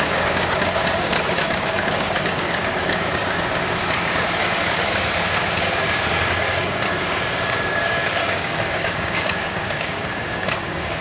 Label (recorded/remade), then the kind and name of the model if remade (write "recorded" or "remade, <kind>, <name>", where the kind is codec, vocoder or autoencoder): remade, codec, DAC